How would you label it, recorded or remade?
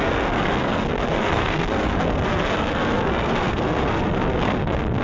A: remade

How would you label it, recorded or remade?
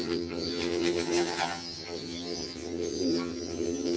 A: remade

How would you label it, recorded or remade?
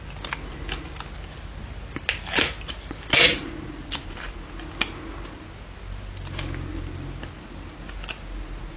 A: recorded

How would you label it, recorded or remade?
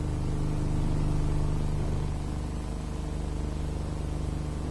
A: recorded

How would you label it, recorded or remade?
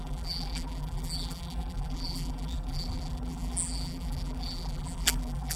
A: remade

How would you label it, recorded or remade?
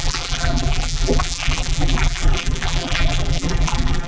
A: remade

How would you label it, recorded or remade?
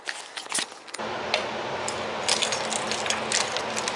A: recorded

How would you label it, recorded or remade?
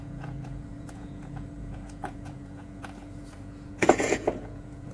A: remade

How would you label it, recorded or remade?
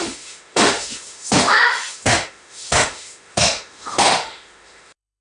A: remade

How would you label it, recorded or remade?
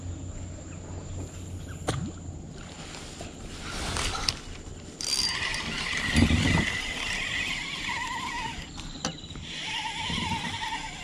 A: recorded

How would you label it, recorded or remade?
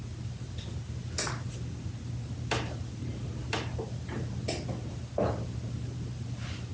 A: recorded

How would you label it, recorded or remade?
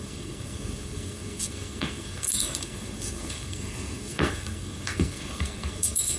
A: remade